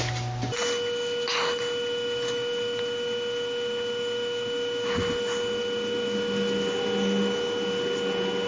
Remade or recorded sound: recorded